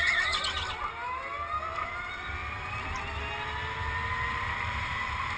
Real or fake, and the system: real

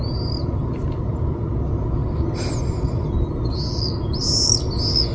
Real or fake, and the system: real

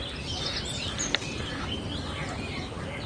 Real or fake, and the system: real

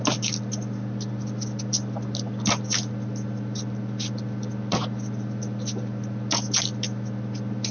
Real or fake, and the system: real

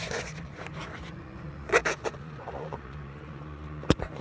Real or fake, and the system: fake, vocoder, Vocos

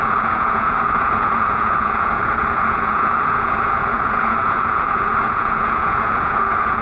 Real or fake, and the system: fake, vocoder, Vocos